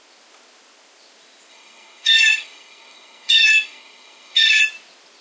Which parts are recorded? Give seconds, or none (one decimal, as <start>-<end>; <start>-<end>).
0.0-1.5; 4.6-5.2